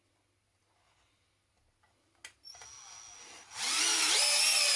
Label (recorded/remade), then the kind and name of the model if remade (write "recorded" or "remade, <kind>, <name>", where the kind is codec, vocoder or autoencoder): recorded